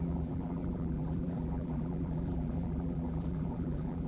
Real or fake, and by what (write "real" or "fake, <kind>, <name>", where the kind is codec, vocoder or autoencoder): fake, vocoder, BigVGAN v2